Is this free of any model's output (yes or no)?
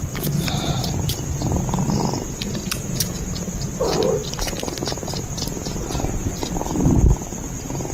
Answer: yes